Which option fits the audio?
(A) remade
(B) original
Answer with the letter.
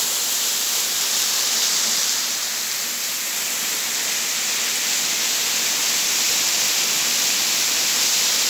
B